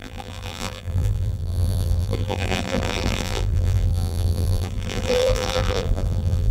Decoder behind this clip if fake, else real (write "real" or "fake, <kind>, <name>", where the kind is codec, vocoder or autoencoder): fake, vocoder, BigVGAN v2